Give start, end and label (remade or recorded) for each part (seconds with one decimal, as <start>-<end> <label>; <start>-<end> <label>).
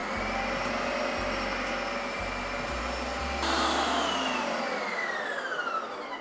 0.0-6.2 recorded